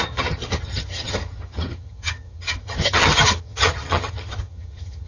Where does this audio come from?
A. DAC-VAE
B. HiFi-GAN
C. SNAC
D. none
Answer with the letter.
B